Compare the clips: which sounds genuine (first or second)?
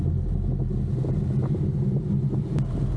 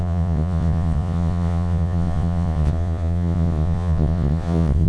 first